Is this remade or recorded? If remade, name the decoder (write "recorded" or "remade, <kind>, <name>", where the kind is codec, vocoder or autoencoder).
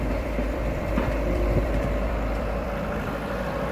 remade, vocoder, BigVGAN v2